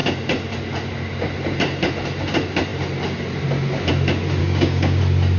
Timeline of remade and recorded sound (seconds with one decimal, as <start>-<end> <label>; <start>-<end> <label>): 0.0-4.4 recorded; 4.4-5.0 remade; 5.0-5.4 recorded